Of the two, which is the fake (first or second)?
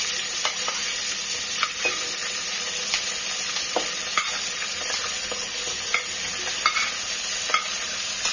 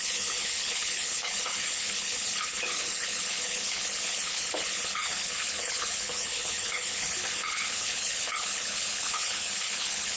second